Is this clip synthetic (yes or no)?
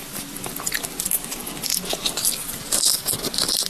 no